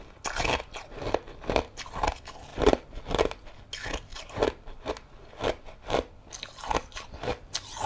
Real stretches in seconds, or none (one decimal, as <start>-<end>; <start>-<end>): 0.0-2.5; 3.0-4.1; 4.9-7.9